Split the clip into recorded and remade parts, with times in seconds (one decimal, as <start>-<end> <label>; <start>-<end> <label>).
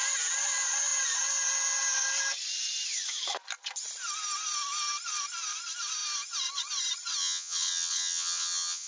0.0-7.2 recorded; 7.2-8.9 remade